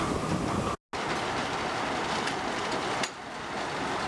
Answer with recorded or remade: recorded